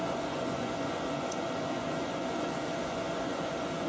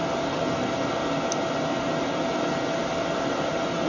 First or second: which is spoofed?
first